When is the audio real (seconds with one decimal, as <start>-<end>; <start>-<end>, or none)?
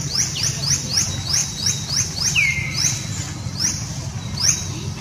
0.0-5.0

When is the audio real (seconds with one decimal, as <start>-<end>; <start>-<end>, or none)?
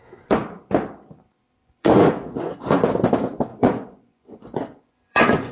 0.6-1.6; 2.9-3.5